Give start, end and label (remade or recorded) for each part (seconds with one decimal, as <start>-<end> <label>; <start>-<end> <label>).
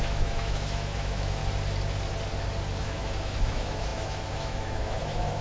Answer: 0.0-1.4 remade; 1.4-2.8 recorded; 2.8-5.4 remade